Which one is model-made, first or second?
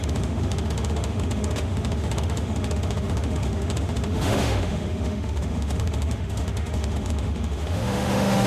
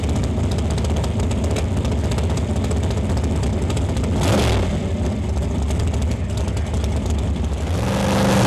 first